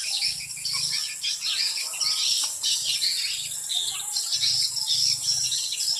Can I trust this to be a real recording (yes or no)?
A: yes